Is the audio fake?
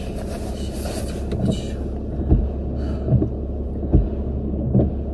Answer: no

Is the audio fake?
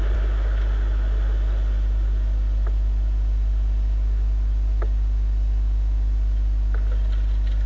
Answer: no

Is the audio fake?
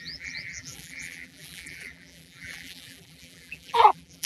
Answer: yes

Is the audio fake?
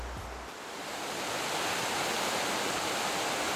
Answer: no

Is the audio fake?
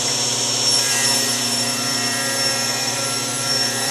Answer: yes